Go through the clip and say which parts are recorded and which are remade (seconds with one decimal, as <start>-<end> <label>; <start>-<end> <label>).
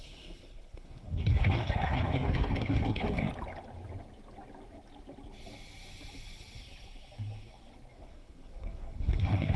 0.0-3.3 remade; 3.3-7.9 recorded; 7.9-9.6 remade